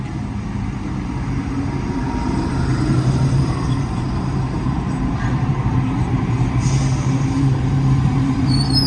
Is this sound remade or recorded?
remade